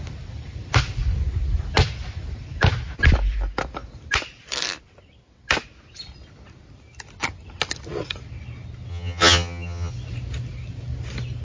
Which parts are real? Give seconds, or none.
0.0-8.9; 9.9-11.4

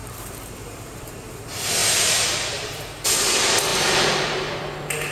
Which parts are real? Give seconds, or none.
1.4-1.8; 2.8-3.7; 4.6-5.1

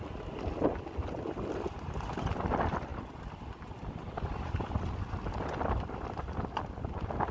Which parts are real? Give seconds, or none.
0.0-7.3

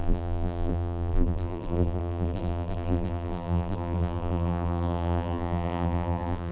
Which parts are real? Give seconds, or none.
none